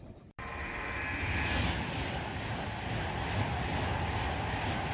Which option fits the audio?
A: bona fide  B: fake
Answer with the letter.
A